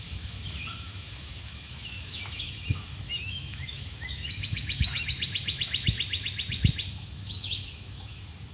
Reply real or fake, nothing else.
fake